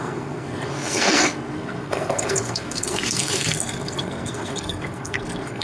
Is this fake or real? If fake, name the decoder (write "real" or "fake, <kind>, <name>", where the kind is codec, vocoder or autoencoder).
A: fake, codec, SNAC